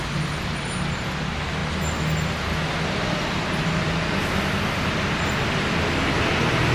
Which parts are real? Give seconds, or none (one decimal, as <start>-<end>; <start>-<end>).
0.0-6.7